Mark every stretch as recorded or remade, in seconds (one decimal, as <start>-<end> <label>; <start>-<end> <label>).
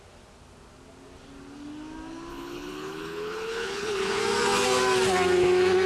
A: 0.0-2.3 recorded; 2.3-4.2 remade; 4.2-5.9 recorded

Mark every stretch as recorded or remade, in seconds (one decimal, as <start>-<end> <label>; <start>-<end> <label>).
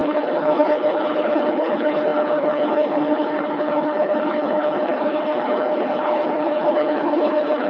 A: 0.0-7.7 remade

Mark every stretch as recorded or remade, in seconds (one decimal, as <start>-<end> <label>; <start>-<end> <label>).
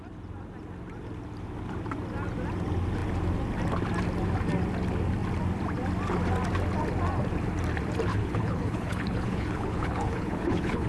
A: 0.0-8.1 recorded; 8.1-10.9 remade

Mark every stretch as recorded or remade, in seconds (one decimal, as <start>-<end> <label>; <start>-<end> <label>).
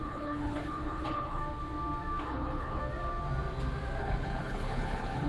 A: 0.0-1.4 remade; 1.4-2.2 recorded; 2.2-2.8 remade; 2.8-4.0 recorded; 4.0-5.3 remade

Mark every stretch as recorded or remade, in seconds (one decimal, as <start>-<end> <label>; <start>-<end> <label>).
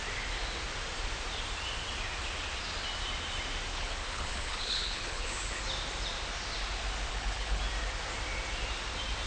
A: 0.0-3.7 recorded; 3.7-5.6 remade; 5.6-7.1 recorded; 7.1-7.6 remade; 7.6-9.3 recorded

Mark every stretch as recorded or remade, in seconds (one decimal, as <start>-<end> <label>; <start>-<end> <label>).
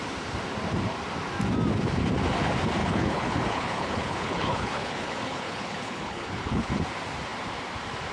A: 0.0-2.8 recorded; 2.8-6.7 remade; 6.7-8.1 recorded